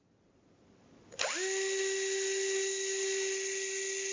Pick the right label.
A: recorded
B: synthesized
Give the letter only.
A